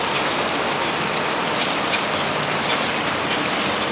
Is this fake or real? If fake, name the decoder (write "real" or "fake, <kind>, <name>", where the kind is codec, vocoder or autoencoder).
real